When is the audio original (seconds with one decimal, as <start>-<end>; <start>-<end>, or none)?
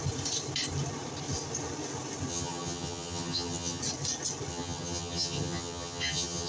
0.0-2.3; 3.8-4.5